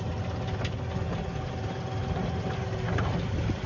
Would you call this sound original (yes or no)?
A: yes